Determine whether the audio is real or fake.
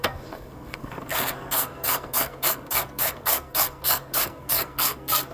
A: fake